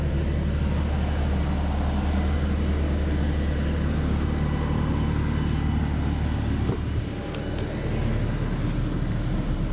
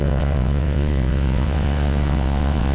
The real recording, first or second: first